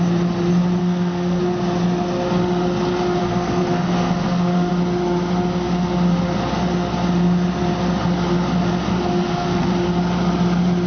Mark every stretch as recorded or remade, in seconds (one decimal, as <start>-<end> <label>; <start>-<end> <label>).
0.0-0.8 recorded; 0.8-1.4 remade; 1.4-3.2 recorded; 3.2-4.7 remade; 4.7-9.1 recorded; 9.1-9.7 remade; 9.7-10.9 recorded